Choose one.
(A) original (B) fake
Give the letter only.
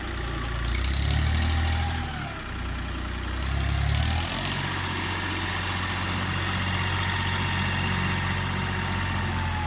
A